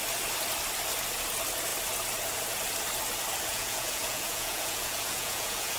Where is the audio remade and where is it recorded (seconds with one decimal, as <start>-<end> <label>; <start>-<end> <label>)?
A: 0.0-3.5 recorded; 3.5-5.8 remade